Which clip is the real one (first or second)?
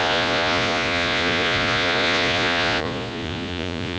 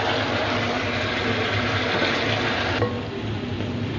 second